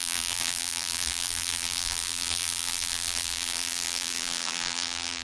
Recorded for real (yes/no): no